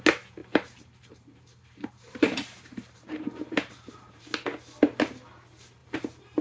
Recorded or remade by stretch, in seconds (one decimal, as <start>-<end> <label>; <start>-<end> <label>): 0.0-0.4 recorded; 0.4-4.2 remade; 4.2-5.8 recorded; 5.8-6.4 remade